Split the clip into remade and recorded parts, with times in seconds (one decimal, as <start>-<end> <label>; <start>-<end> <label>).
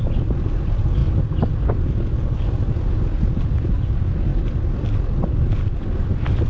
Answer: 0.0-1.0 recorded; 1.0-1.5 remade; 1.5-4.3 recorded; 4.3-5.0 remade; 5.0-5.7 recorded; 5.7-6.5 remade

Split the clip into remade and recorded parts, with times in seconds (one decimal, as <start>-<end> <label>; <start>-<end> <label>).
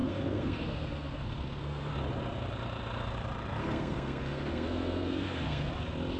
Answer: 0.0-1.9 remade; 1.9-3.6 recorded; 3.6-5.7 remade; 5.7-6.2 recorded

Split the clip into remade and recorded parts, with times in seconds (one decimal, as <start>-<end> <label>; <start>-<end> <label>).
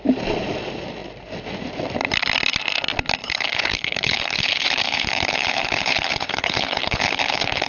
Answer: 0.0-3.2 recorded; 3.2-7.7 remade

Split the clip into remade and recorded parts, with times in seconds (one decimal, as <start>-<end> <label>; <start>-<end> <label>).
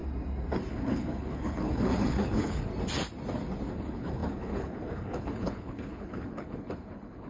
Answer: 0.0-0.7 recorded; 0.7-2.7 remade; 2.7-3.7 recorded; 3.7-7.3 remade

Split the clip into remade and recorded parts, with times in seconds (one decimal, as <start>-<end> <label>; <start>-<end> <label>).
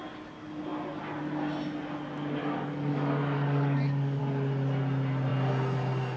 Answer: 0.0-2.4 recorded; 2.4-4.2 remade; 4.2-6.2 recorded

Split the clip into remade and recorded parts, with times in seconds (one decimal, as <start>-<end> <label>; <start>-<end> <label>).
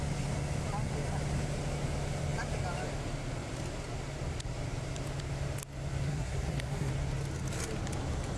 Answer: 0.0-6.1 recorded; 6.1-6.9 remade; 6.9-8.4 recorded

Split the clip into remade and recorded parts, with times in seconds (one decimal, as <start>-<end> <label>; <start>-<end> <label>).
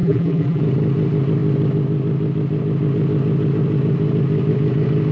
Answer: 0.0-0.6 remade; 0.6-5.1 recorded